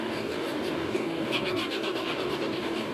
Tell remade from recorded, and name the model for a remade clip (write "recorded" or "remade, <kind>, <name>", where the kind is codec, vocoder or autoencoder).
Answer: remade, codec, DAC